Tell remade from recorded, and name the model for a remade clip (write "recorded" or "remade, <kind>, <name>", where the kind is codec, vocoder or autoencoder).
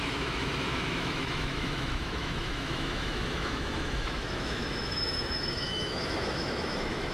remade, autoencoder, DAC-VAE